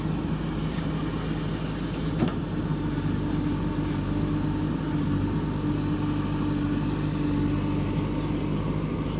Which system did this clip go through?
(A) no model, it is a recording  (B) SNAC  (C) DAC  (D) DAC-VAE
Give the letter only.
A